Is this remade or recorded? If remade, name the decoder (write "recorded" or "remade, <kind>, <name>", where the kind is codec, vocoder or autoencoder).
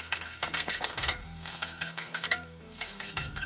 remade, codec, SNAC